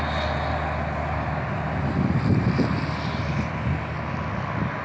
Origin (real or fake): real